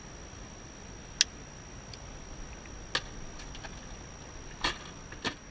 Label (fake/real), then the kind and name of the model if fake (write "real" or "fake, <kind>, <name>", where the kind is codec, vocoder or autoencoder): real